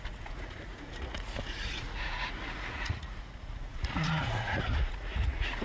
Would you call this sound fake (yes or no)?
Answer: yes